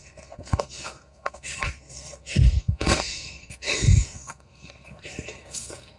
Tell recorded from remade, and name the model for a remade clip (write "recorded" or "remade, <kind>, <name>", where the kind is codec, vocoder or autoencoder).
remade, codec, SNAC